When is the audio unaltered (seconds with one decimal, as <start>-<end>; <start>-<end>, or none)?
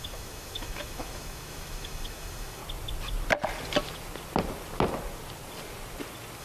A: 2.6-6.4